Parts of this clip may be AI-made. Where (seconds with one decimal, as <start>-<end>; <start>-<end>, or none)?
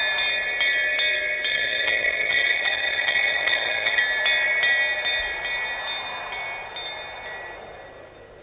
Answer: 1.5-4.0